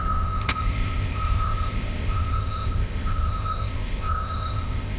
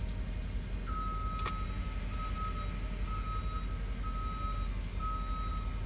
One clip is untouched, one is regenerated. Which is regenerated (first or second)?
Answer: first